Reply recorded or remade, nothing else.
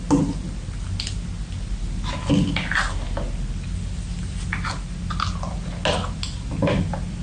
recorded